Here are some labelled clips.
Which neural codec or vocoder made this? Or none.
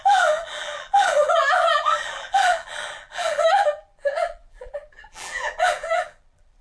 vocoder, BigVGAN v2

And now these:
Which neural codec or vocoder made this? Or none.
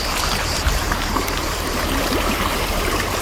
vocoder, BigVGAN v2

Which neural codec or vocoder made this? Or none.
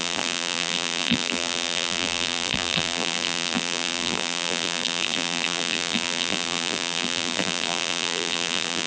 vocoder, BigVGAN v2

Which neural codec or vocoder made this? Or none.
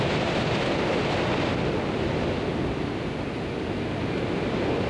none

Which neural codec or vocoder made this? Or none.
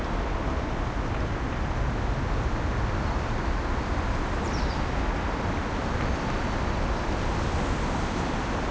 none